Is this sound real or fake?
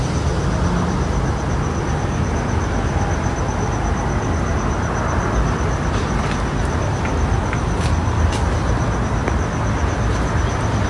real